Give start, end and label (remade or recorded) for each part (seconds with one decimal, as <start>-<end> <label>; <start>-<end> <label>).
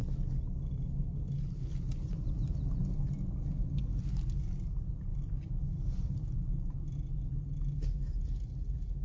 0.0-9.0 recorded